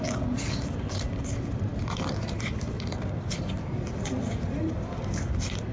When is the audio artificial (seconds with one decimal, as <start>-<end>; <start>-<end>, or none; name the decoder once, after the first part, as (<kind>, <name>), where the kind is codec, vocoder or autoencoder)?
none